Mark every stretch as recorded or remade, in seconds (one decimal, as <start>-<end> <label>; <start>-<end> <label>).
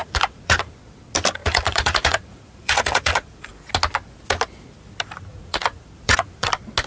0.0-0.7 remade; 0.7-1.4 recorded; 1.4-3.7 remade; 3.7-5.3 recorded; 5.3-6.5 remade; 6.5-6.9 recorded